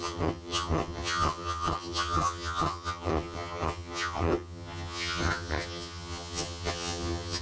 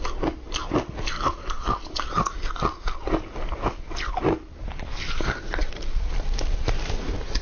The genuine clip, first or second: second